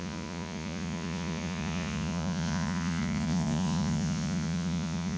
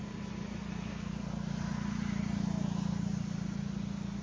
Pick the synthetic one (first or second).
first